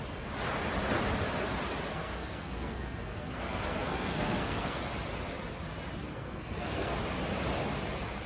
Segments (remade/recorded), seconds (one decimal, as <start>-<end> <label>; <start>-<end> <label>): 0.0-1.9 recorded; 1.9-4.8 remade; 4.8-6.1 recorded; 6.1-6.9 remade; 6.9-8.3 recorded